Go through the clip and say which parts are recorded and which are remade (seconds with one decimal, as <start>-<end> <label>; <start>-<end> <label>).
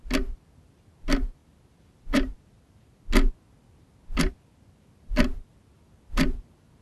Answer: 0.0-6.8 recorded